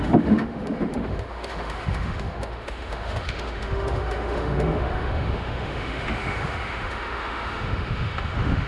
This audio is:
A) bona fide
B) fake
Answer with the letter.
B